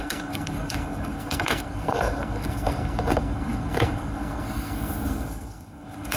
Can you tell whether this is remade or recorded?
remade